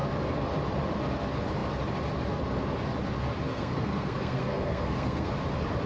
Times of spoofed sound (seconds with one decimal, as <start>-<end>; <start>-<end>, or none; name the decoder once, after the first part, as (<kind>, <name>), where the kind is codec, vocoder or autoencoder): 3.5-5.3 (codec, SNAC)